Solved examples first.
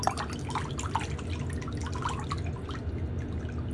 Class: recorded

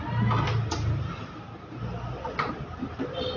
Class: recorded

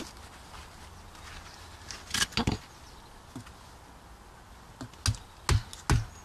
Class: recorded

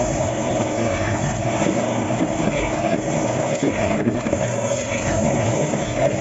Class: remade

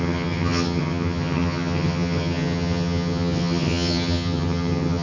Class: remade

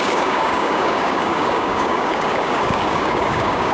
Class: remade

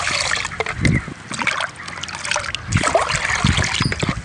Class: recorded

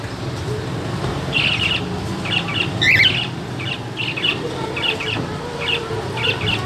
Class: recorded